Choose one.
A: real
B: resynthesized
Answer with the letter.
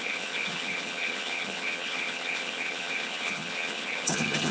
B